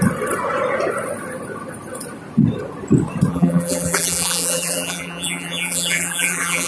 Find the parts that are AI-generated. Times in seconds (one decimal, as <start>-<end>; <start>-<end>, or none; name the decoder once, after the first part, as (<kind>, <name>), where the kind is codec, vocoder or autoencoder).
3.3-6.7 (vocoder, BigVGAN v2)